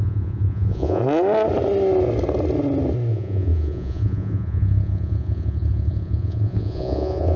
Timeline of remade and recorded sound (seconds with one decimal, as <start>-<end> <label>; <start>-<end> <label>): 0.0-1.0 remade; 1.0-3.1 recorded; 3.1-7.4 remade